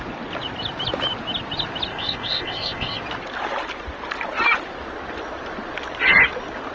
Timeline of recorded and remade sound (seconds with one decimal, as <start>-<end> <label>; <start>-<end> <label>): 0.0-1.9 recorded; 1.9-3.0 remade; 3.0-6.7 recorded